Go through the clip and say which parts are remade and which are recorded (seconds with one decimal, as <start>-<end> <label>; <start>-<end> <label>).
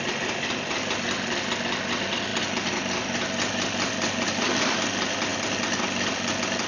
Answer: 0.0-6.7 recorded